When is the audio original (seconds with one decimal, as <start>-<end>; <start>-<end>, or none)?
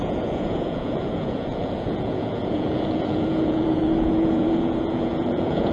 none